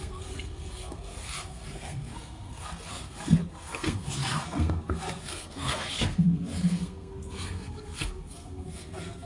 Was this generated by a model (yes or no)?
yes